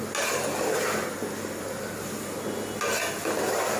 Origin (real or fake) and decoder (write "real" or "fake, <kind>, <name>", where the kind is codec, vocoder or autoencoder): real